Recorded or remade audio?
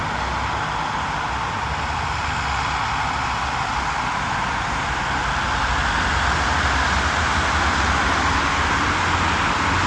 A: recorded